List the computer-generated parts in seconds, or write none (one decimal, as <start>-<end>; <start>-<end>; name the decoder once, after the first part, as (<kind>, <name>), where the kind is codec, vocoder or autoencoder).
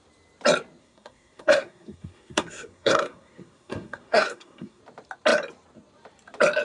0.8-4.8 (codec, SNAC)